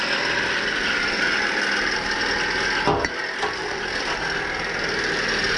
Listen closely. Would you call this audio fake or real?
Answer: real